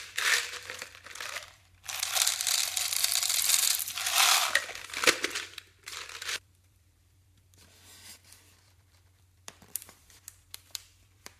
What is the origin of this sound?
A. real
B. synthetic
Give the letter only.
B